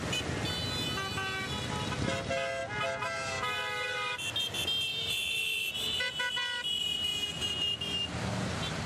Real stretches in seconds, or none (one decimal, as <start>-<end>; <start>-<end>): 0.0-4.9; 5.7-8.9